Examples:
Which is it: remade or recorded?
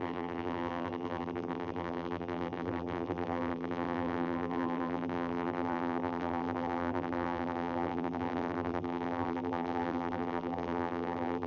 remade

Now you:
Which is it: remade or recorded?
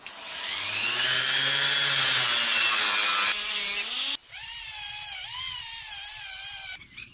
recorded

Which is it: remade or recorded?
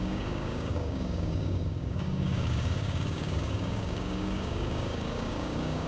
remade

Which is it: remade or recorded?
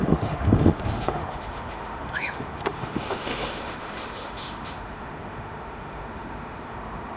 remade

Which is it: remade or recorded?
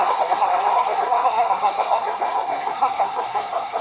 remade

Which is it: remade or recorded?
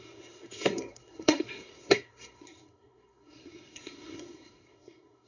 remade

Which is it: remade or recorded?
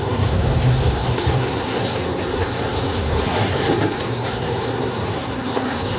remade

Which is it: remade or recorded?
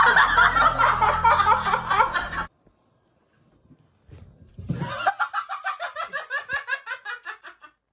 recorded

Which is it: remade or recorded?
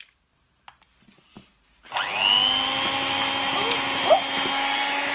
recorded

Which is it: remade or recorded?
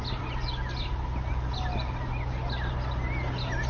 recorded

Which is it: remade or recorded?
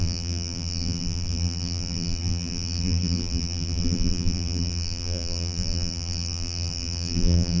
remade